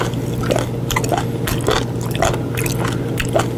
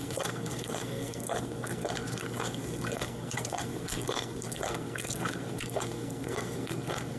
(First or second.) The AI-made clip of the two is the second